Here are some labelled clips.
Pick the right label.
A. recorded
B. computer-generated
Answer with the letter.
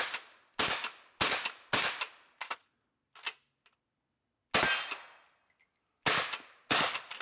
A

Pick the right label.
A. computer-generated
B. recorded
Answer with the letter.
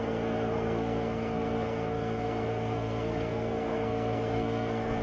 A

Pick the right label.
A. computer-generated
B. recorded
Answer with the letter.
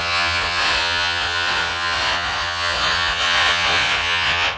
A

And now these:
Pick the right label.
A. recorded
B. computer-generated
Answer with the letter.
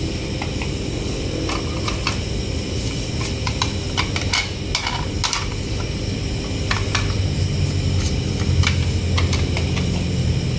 A